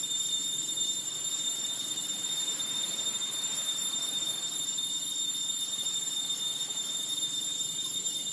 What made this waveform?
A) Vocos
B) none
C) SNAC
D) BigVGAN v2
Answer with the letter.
D